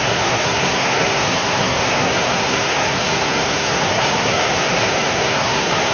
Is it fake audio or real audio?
fake